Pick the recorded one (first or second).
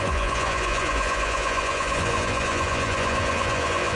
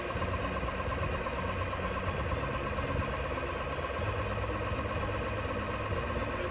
second